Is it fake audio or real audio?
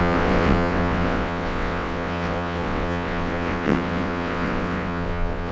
fake